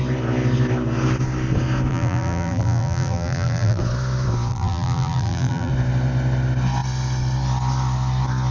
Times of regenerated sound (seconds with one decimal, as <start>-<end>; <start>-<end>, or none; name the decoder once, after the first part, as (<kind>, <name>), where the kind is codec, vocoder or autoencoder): 1.9-3.8 (vocoder, BigVGAN v2); 4.5-5.7